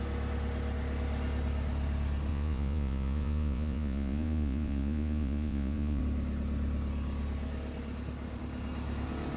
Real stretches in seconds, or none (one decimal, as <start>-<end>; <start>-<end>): 0.0-2.3; 6.0-9.4